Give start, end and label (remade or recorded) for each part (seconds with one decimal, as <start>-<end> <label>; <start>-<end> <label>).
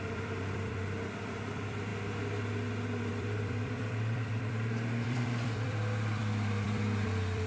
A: 0.0-1.9 remade; 1.9-3.1 recorded; 3.1-7.5 remade